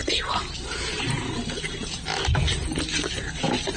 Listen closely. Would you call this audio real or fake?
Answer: real